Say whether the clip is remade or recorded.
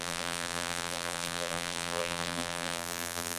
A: remade